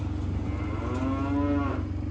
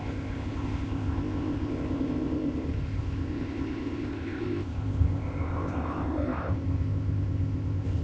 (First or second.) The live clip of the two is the first